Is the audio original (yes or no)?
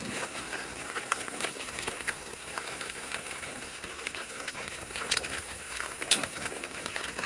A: no